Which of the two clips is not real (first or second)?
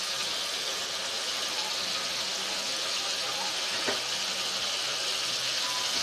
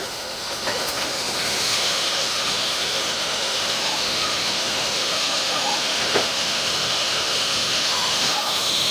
second